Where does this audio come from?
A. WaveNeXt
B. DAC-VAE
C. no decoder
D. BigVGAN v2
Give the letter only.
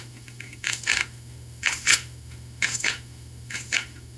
B